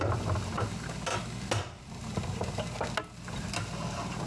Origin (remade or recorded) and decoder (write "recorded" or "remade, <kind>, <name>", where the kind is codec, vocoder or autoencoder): recorded